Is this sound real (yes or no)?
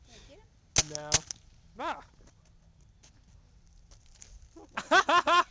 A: yes